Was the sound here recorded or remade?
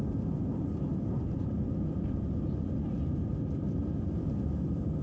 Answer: recorded